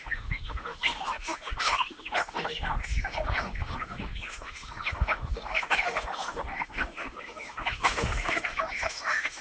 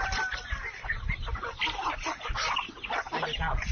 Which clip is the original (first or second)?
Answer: second